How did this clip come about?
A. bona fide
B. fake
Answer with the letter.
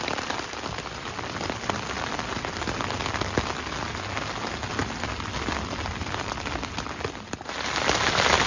A